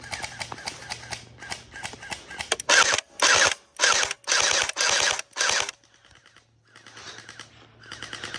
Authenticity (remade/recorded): recorded